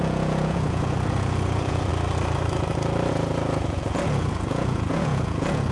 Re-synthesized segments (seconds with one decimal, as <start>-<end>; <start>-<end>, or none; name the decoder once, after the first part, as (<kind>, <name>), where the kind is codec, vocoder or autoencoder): 0.0-1.9 (vocoder, Vocos); 3.1-5.7